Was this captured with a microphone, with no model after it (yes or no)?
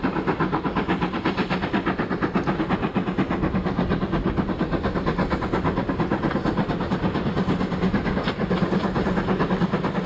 yes